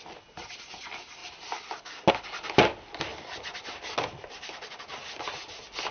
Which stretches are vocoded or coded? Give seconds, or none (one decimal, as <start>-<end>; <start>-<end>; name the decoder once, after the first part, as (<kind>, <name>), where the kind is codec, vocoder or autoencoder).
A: none